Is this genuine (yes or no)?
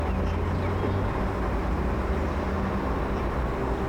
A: yes